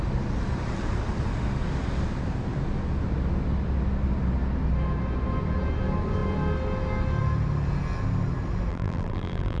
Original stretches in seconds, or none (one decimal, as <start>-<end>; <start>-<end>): 0.0-8.7